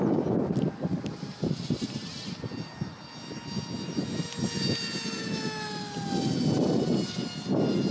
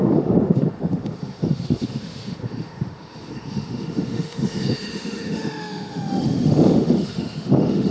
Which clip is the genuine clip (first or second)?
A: first